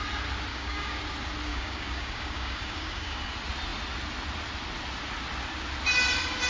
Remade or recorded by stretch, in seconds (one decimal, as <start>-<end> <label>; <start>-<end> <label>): 0.0-0.5 recorded; 0.5-1.0 remade; 1.0-1.5 recorded; 1.5-3.3 remade; 3.3-6.5 recorded